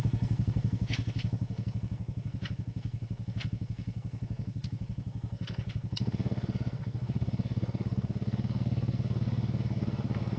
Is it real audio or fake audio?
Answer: fake